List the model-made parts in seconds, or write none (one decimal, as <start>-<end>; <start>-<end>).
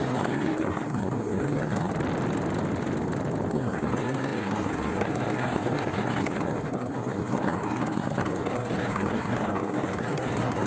0.0-1.9; 3.5-10.7